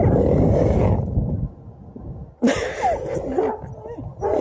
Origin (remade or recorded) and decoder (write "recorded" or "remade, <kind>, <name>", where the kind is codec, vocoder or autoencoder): recorded